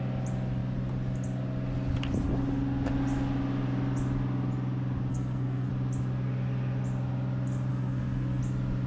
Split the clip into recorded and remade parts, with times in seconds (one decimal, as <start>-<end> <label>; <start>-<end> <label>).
0.0-5.1 recorded; 5.1-5.7 remade; 5.7-7.7 recorded; 7.7-8.4 remade; 8.4-8.9 recorded